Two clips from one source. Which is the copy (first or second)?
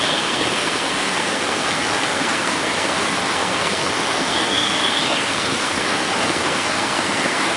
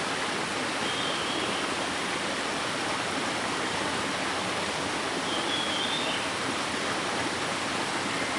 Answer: first